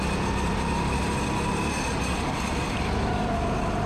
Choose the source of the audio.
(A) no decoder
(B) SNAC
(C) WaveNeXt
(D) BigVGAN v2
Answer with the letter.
A